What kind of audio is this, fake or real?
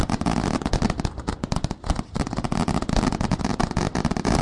real